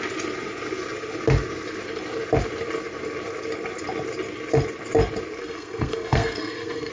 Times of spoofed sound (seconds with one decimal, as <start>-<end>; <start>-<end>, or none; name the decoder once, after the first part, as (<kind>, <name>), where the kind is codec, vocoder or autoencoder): 5.4-6.9 (codec, SNAC)